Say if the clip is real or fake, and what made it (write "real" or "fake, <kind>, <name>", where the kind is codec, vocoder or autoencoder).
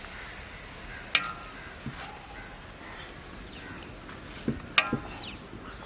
real